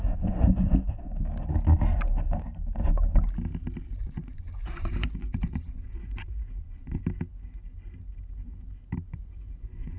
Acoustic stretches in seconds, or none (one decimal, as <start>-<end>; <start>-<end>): 0.0-4.0; 7.0-9.1